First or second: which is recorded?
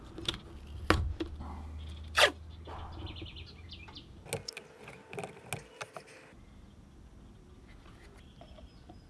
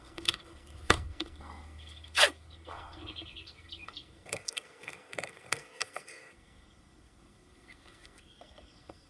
first